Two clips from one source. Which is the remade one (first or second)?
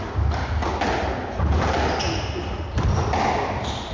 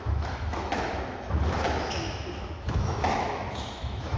second